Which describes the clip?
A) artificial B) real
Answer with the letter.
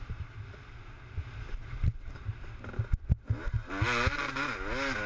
B